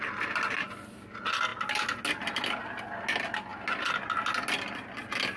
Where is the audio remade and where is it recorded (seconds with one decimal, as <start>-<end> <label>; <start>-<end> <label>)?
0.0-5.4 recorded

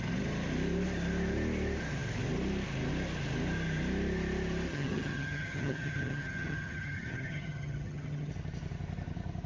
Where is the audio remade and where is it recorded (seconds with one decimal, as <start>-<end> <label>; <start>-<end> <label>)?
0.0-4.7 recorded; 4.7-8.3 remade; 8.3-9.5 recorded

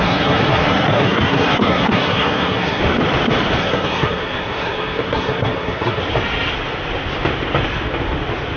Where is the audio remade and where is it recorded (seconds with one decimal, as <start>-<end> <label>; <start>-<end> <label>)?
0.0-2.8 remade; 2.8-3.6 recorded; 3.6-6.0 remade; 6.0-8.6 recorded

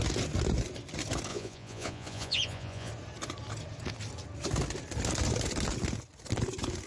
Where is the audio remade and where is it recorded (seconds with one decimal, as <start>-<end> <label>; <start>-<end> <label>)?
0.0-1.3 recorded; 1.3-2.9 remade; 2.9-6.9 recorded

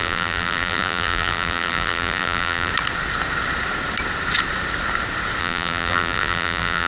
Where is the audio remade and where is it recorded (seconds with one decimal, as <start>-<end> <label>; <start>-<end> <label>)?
0.0-2.7 remade; 2.7-5.4 recorded; 5.4-6.9 remade

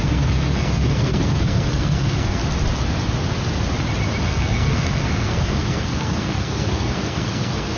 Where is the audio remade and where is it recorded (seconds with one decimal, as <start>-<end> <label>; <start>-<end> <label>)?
0.0-2.4 remade; 2.4-4.2 recorded; 4.2-7.8 remade

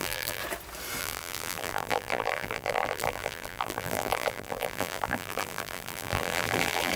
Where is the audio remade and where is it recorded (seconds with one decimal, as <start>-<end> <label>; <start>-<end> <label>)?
0.0-0.4 remade; 0.4-1.0 recorded; 1.0-7.0 remade